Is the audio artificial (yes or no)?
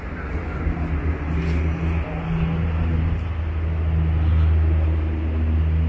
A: no